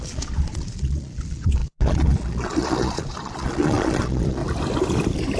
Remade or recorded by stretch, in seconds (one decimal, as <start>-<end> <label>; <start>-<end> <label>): 0.0-4.4 remade; 4.4-5.4 recorded

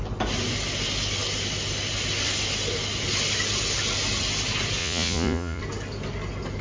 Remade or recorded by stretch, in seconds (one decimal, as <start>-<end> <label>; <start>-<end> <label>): 0.0-4.8 recorded; 4.8-5.6 remade; 5.6-6.6 recorded

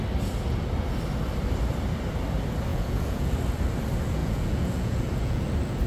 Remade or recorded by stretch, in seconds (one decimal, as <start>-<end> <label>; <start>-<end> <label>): 0.0-2.7 recorded; 2.7-3.3 remade; 3.3-4.2 recorded; 4.2-5.4 remade; 5.4-5.9 recorded